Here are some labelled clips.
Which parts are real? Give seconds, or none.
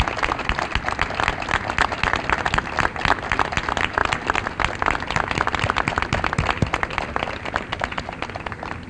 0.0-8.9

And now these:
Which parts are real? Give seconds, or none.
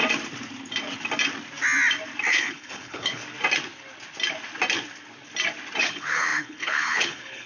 0.0-2.3; 3.2-5.8